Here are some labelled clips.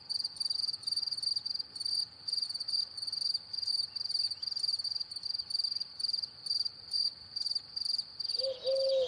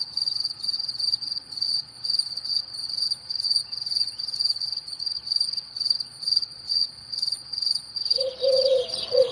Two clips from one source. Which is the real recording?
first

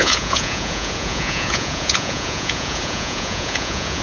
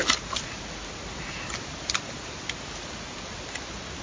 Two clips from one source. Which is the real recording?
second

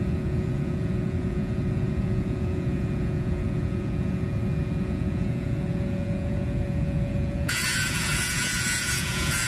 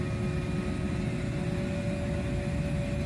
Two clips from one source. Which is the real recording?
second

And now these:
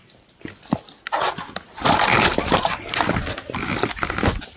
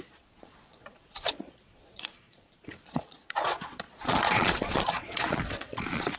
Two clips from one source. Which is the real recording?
first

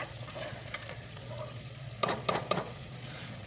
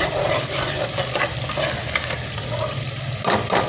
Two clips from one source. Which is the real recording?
second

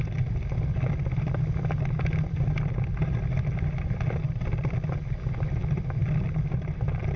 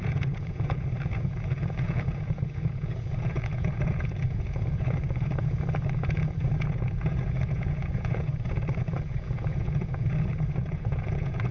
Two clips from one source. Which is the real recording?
first